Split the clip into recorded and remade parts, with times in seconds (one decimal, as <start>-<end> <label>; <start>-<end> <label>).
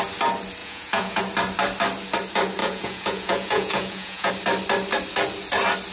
0.0-0.6 recorded; 0.6-1.2 remade; 1.2-2.6 recorded; 2.6-4.3 remade; 4.3-5.9 recorded